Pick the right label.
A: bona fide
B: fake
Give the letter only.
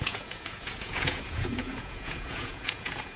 B